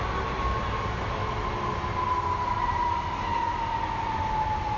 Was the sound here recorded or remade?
recorded